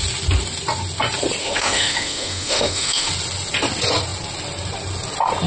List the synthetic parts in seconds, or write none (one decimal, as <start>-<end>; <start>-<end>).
1.4-3.1